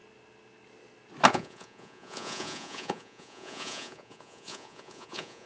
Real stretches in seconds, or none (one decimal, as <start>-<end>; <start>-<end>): 0.0-1.3